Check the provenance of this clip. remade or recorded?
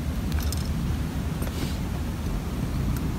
recorded